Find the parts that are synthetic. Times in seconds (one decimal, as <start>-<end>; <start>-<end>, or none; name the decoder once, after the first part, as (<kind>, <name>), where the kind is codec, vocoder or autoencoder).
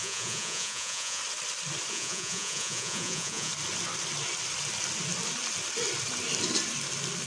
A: 0.0-1.2 (vocoder, Vocos); 1.9-3.5